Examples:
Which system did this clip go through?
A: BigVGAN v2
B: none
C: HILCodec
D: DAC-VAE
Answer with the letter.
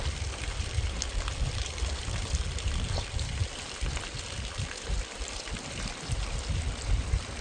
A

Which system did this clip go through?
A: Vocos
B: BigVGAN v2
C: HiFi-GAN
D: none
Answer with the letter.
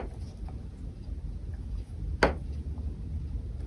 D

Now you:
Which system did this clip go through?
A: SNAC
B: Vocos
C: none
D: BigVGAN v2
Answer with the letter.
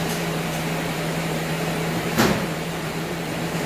D